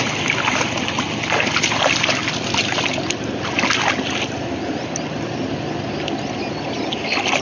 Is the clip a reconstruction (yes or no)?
no